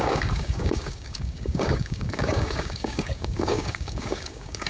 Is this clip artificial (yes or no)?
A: yes